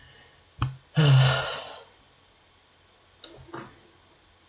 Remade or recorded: recorded